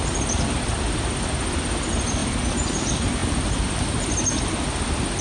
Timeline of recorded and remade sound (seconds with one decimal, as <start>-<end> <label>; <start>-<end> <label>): 0.0-5.2 recorded